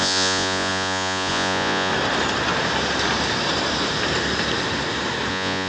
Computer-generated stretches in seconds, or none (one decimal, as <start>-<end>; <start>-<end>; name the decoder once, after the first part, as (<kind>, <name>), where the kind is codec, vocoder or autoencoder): 0.0-1.9 (vocoder, Vocos); 5.3-5.7